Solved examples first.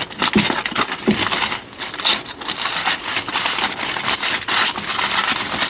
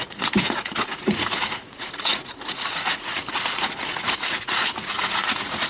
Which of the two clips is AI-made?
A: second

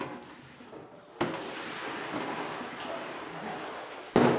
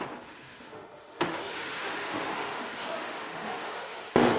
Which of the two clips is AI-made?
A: second